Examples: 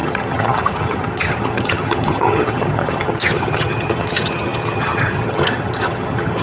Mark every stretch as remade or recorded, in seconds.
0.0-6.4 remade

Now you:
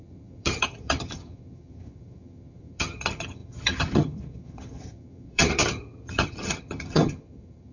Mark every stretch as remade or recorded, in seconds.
0.0-7.7 remade

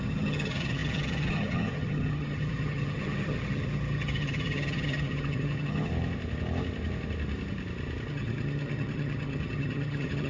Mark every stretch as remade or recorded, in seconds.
0.0-5.9 remade; 5.9-8.1 recorded; 8.1-10.3 remade